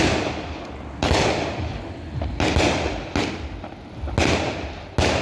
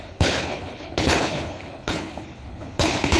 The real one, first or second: first